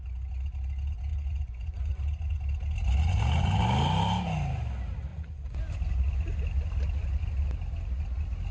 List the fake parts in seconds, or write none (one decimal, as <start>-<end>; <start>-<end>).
1.1-2.4; 5.1-5.6